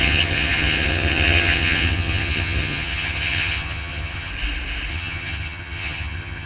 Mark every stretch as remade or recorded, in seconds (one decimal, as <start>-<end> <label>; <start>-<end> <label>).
0.0-4.3 remade; 4.3-4.9 recorded; 4.9-6.5 remade